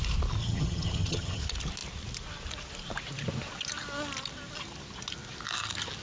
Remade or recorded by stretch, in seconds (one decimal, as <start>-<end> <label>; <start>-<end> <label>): 0.0-0.4 recorded; 0.4-1.4 remade; 1.4-6.0 recorded